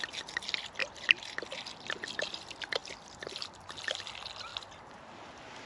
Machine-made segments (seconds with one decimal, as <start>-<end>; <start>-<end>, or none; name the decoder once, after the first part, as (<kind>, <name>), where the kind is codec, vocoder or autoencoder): 0.8-1.4 (vocoder, BigVGAN v2); 2.8-3.7